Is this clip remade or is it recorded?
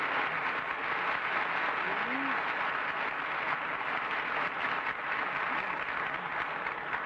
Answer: recorded